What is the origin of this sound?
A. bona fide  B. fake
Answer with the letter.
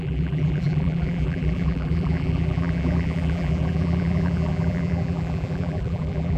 B